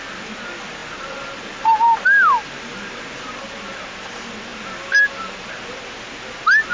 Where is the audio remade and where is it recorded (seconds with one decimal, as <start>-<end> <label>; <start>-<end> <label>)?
0.0-6.7 recorded